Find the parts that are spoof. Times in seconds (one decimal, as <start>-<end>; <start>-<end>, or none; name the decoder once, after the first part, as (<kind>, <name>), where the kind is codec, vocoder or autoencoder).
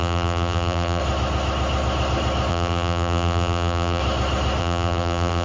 0.0-1.0 (vocoder, BigVGAN v2); 2.5-4.0; 4.6-5.4